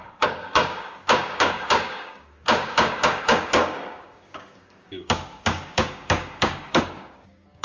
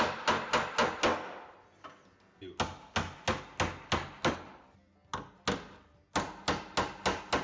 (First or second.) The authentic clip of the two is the second